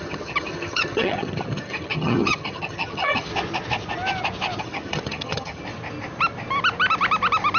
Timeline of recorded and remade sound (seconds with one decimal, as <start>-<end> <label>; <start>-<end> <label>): 0.0-3.3 remade; 3.3-4.6 recorded; 4.6-5.6 remade; 5.6-7.6 recorded

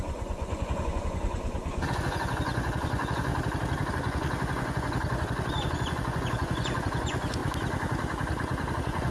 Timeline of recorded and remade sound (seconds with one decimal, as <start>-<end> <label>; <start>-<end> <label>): 0.0-3.3 remade; 3.3-3.9 recorded; 3.9-7.4 remade; 7.4-8.7 recorded; 8.7-9.1 remade